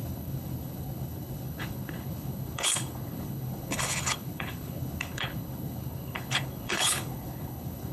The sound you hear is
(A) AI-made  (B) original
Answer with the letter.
A